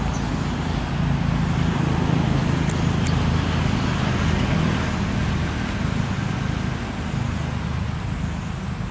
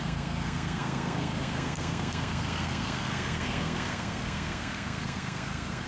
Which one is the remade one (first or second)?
second